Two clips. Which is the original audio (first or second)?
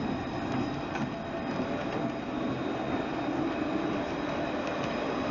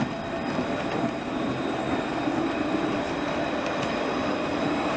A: first